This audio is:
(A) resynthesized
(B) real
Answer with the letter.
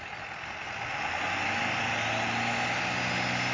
B